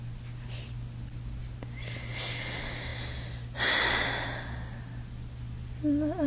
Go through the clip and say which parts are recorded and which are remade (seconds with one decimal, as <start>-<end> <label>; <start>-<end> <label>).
0.0-6.3 recorded